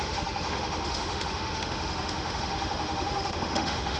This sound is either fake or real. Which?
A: fake